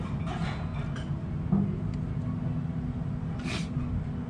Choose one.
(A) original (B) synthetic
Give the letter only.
A